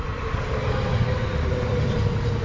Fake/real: real